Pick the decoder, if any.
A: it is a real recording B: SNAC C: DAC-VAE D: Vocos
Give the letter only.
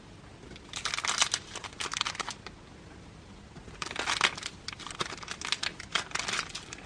A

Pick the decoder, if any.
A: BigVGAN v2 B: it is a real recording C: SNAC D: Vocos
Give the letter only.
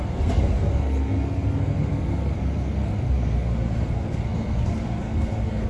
C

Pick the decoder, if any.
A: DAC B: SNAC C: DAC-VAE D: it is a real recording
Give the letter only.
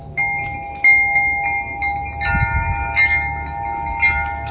D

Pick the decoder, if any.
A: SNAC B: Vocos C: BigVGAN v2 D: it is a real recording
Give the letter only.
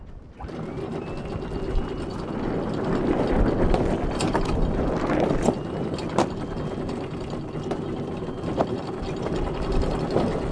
D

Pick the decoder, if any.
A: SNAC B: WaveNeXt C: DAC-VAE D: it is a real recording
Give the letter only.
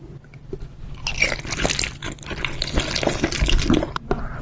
D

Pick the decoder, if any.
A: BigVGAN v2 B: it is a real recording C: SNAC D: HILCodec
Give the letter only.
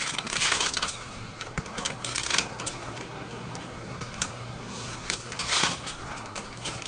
C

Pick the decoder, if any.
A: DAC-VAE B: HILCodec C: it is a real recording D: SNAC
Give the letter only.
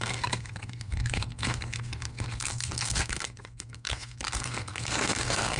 D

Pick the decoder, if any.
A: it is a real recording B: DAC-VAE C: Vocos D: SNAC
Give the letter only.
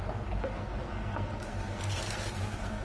D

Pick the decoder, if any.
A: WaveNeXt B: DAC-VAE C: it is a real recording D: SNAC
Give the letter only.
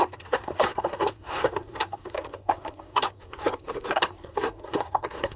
D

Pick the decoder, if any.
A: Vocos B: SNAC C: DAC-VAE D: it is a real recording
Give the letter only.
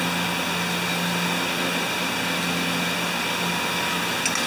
D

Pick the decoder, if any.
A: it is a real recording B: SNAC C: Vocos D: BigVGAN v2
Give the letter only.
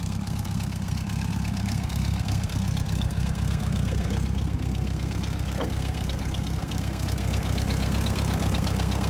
B